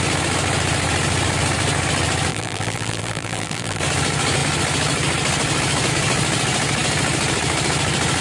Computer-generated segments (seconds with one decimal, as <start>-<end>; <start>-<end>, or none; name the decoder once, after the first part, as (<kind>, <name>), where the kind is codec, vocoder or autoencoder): 2.3-3.8 (vocoder, BigVGAN v2)